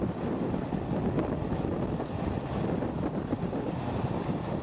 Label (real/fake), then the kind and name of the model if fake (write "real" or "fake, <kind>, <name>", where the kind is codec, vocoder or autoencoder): real